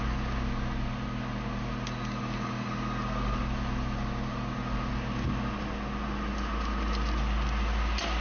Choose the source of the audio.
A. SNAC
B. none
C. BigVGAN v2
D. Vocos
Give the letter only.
B